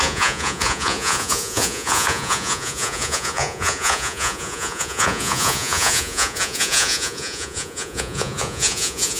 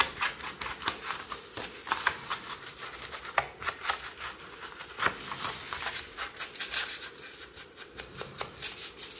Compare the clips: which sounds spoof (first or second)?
first